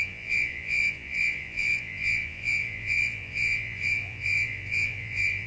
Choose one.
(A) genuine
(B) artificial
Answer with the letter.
B